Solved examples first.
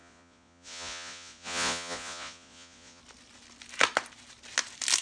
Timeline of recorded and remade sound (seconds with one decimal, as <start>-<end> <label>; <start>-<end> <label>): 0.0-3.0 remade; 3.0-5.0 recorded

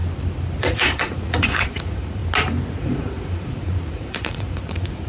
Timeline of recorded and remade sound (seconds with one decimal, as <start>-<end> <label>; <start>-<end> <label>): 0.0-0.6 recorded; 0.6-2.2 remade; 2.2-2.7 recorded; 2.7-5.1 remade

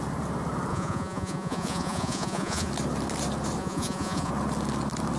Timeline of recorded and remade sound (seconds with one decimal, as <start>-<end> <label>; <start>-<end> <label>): 0.0-0.7 recorded; 0.7-2.7 remade; 2.7-3.6 recorded; 3.6-4.3 remade; 4.3-5.2 recorded